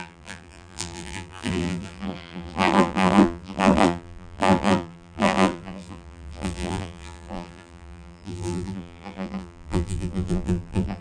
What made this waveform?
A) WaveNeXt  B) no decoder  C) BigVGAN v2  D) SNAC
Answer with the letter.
C